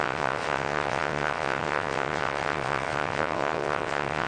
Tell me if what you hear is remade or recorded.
remade